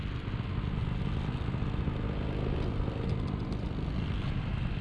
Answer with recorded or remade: recorded